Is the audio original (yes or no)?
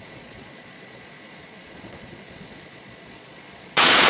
no